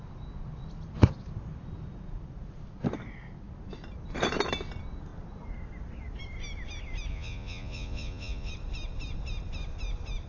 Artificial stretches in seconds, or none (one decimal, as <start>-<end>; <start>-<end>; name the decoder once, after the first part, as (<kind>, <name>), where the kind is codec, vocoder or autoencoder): 7.1-8.5 (vocoder, Vocos)